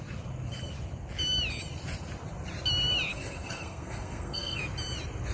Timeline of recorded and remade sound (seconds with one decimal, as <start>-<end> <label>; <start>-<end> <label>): 0.0-3.1 recorded; 3.1-4.6 remade; 4.6-5.3 recorded